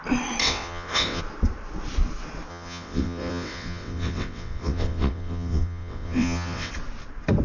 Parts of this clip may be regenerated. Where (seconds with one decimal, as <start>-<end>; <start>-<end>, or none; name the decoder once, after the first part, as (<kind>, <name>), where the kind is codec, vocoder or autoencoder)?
0.4-1.2 (vocoder, WaveNeXt); 2.5-6.7